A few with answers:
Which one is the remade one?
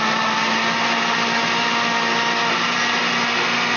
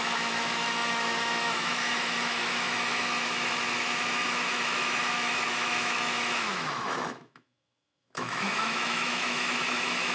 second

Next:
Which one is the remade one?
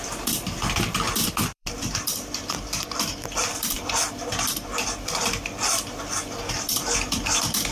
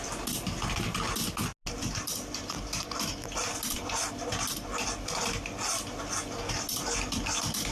first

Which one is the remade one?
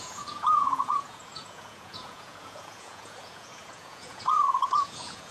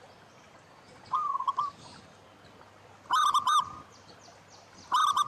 first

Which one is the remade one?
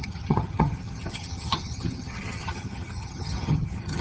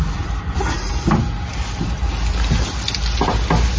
first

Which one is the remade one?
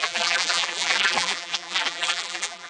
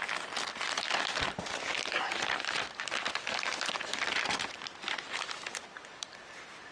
first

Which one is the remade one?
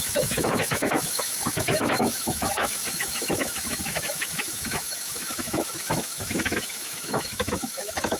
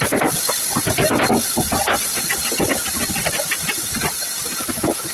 first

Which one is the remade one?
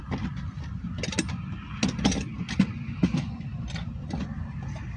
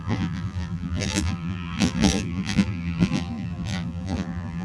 second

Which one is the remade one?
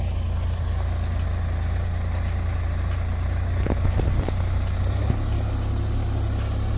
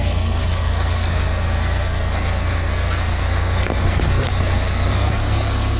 second